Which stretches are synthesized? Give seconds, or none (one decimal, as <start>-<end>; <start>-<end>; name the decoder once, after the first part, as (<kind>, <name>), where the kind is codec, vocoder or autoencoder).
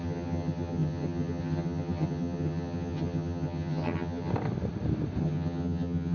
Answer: 0.0-4.3 (vocoder, HiFi-GAN); 5.2-6.1